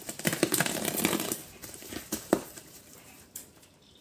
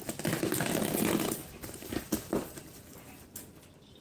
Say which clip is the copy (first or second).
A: first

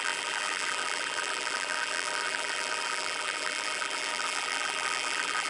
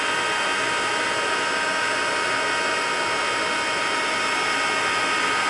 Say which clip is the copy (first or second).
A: first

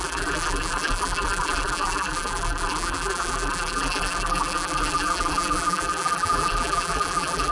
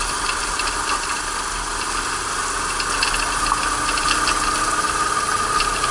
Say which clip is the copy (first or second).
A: first